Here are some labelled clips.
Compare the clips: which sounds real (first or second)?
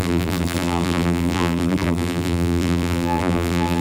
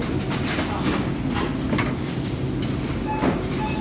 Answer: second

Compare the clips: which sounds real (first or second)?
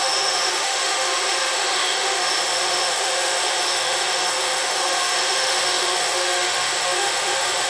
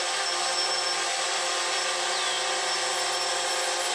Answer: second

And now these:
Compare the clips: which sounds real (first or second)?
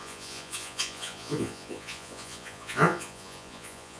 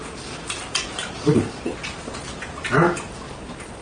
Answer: second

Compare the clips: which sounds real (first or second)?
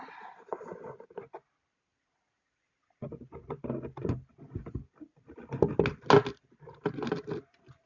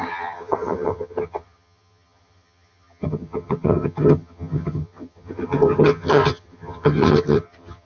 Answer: first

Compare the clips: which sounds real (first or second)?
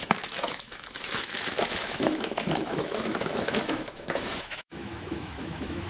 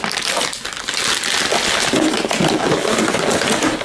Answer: second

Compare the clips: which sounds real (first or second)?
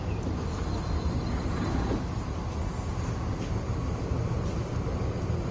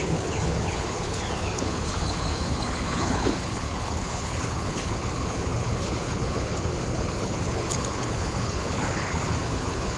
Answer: first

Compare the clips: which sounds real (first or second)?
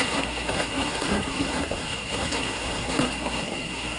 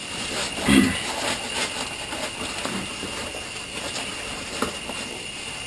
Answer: second